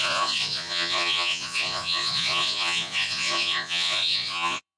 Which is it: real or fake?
fake